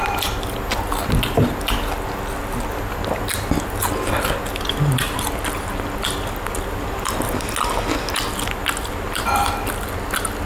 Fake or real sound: real